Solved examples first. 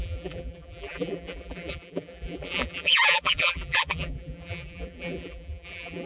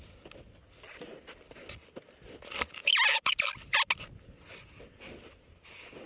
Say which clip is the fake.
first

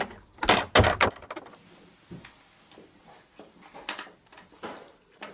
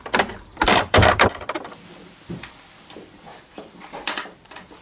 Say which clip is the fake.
second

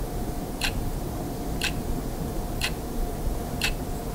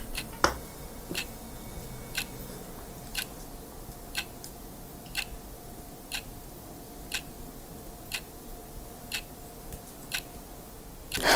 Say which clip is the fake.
first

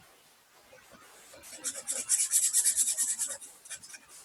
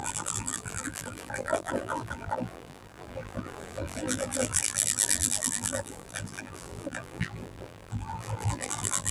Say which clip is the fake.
second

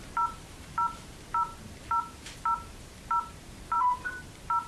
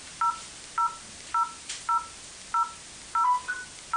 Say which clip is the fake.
first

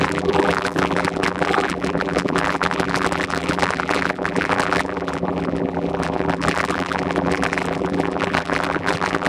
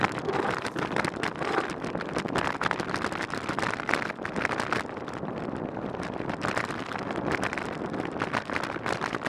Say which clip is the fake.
first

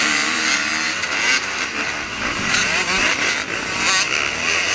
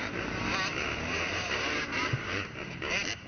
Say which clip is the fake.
second